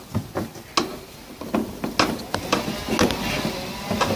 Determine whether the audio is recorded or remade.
recorded